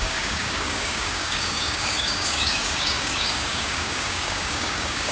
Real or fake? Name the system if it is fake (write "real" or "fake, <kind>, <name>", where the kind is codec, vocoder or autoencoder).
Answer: fake, codec, DAC